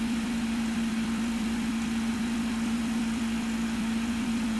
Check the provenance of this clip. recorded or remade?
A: remade